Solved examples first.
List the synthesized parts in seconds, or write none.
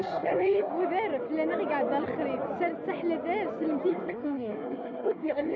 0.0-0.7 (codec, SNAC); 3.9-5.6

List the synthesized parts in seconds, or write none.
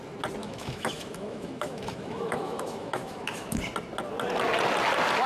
0.4-3.6 (autoencoder, DAC-VAE)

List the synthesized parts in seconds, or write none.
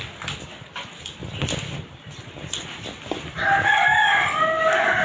none